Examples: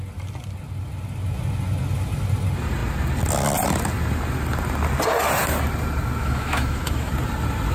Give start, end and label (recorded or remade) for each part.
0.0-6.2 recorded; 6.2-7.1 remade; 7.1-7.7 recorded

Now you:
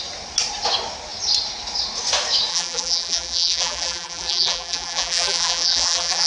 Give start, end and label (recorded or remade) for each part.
0.0-2.5 recorded; 2.5-6.3 remade

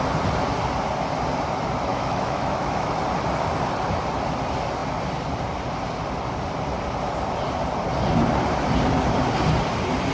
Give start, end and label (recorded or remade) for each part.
0.0-1.9 recorded; 1.9-3.0 remade; 3.0-10.1 recorded

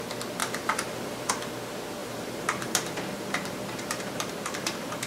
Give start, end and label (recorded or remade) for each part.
0.0-0.4 recorded; 0.4-1.3 remade; 1.3-2.0 recorded; 2.0-5.1 remade

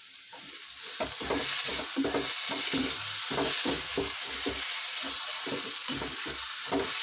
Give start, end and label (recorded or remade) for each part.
0.0-7.0 recorded